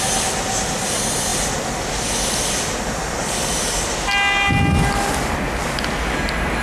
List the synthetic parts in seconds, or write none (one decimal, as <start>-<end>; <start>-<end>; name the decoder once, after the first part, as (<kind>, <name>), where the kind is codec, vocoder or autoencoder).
none